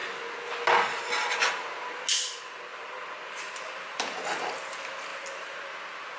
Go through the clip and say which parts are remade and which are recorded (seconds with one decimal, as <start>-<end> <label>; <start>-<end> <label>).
0.0-6.2 recorded